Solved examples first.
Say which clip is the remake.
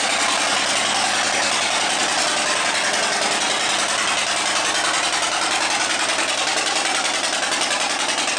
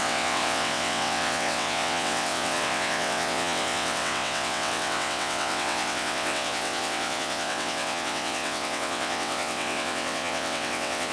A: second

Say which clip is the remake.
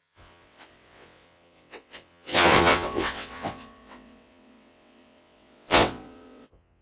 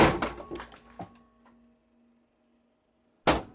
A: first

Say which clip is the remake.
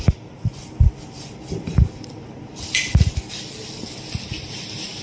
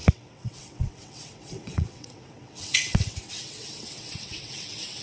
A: second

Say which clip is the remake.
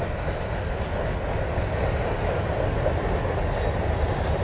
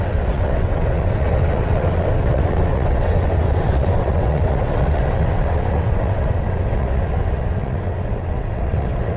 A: second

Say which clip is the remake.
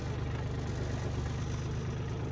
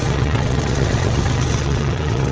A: second